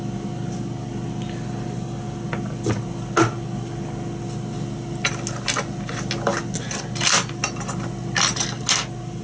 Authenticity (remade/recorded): recorded